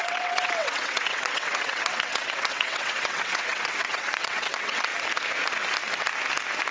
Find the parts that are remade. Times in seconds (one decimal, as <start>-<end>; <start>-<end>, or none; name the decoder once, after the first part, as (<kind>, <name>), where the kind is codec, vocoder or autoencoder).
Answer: 0.0-4.9 (vocoder, WaveNeXt)